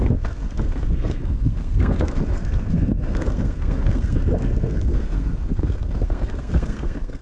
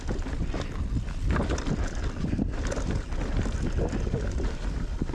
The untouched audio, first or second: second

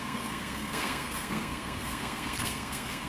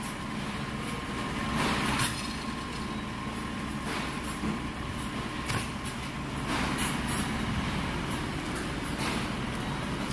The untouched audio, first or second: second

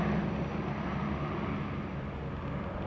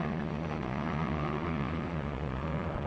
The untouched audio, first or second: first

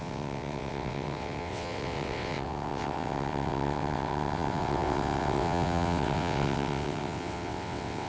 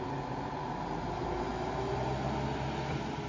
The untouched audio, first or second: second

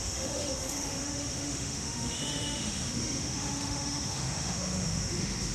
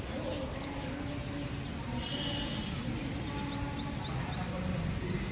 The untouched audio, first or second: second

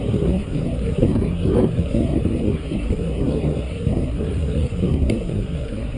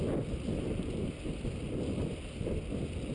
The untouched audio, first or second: second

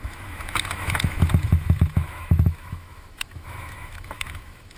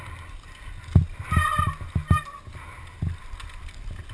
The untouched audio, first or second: second